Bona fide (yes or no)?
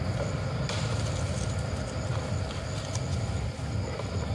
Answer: yes